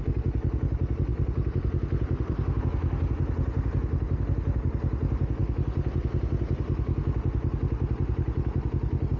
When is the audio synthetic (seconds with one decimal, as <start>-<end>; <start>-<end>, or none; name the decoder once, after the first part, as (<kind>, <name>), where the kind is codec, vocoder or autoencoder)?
1.1-2.6 (vocoder, BigVGAN v2)